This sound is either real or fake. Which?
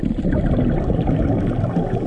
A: real